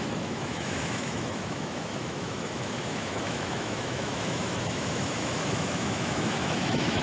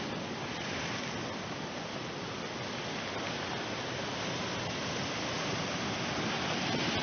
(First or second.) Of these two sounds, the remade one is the first